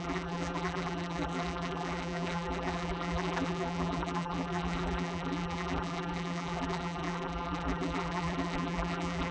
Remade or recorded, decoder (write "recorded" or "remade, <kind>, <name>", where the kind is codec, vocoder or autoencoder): remade, vocoder, BigVGAN v2